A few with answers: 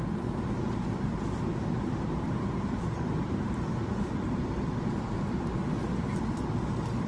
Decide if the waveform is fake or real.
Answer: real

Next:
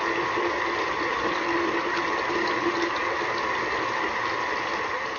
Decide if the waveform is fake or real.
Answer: real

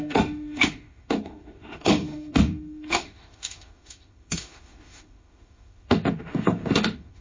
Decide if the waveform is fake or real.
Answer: fake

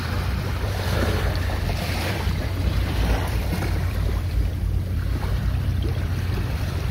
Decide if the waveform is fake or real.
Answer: fake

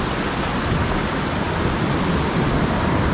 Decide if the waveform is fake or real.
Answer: real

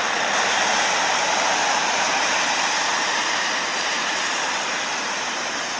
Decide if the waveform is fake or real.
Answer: fake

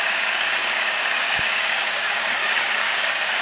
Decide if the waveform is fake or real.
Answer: fake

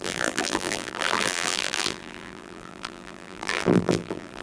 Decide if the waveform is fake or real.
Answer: fake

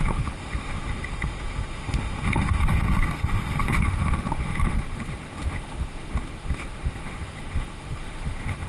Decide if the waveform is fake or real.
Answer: fake